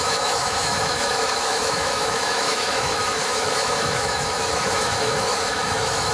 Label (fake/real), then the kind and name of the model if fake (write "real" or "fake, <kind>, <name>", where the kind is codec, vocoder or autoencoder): fake, autoencoder, DAC-VAE